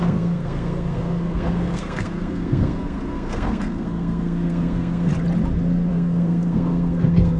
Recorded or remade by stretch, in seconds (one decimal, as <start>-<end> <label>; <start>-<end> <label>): 0.0-5.1 remade; 5.1-5.9 recorded; 5.9-7.4 remade